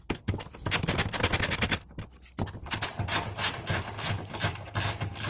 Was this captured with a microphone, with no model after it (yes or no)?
yes